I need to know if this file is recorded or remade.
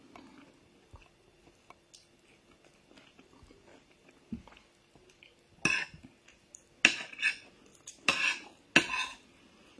recorded